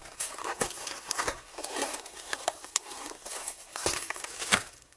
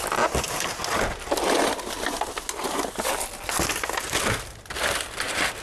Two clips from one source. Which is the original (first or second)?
second